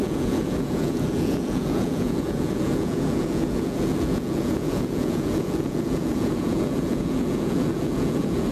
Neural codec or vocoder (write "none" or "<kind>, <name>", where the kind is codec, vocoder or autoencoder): vocoder, Vocos